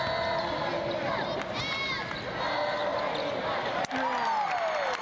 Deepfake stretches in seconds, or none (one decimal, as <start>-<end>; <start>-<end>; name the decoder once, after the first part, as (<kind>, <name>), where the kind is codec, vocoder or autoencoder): none